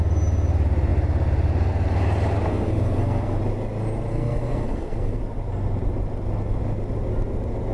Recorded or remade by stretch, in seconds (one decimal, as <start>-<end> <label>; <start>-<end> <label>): 0.0-2.5 recorded; 2.5-3.4 remade; 3.4-4.1 recorded; 4.1-5.2 remade; 5.2-7.7 recorded